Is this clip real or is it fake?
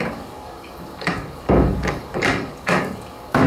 fake